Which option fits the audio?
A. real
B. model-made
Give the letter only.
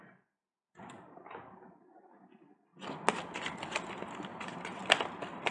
A